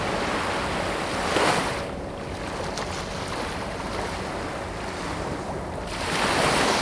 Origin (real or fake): real